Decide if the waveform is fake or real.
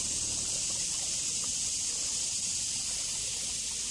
real